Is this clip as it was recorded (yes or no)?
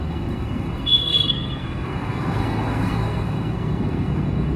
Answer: no